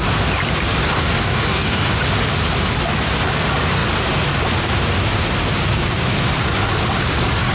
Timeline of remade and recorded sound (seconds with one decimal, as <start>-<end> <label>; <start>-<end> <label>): 0.0-0.8 recorded; 0.8-1.9 remade; 1.9-7.5 recorded